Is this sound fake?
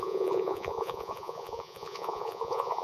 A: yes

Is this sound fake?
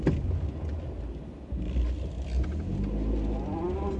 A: no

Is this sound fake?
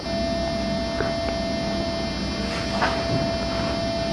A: no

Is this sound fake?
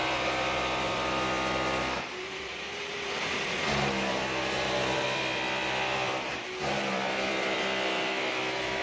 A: yes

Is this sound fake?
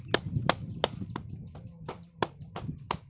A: no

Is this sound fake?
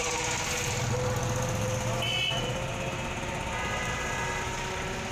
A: no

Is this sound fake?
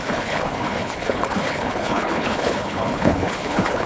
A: yes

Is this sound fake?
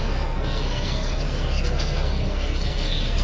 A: yes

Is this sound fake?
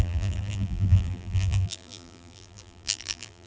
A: yes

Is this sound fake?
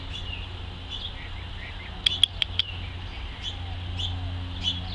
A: no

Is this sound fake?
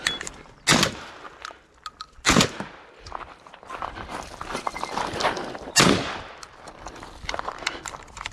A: no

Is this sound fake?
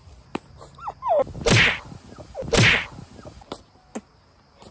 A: no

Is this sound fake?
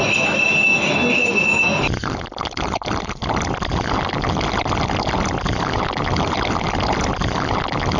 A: no